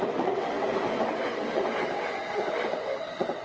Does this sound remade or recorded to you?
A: remade